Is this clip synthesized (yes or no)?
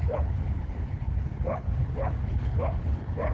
yes